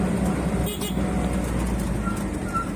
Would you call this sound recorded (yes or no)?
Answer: yes